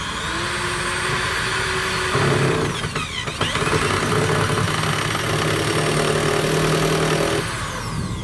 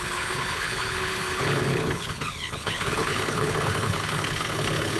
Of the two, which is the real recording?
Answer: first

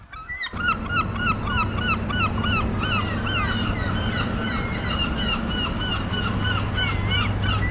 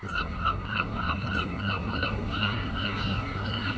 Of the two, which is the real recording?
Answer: first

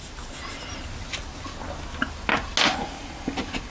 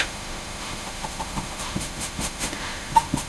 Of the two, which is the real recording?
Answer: first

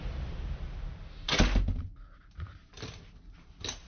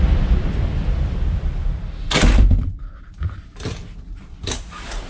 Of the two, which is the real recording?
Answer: first